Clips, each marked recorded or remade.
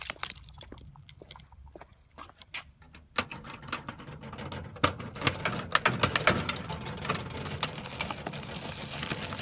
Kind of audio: recorded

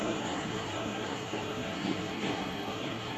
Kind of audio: remade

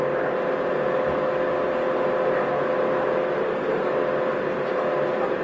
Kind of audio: recorded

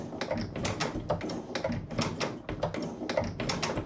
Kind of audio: recorded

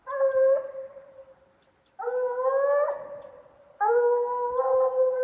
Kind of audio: recorded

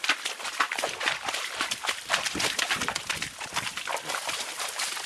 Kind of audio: recorded